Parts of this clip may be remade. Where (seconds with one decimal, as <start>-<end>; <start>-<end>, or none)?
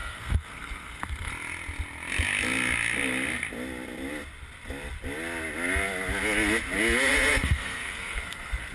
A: 0.0-1.3; 7.1-8.7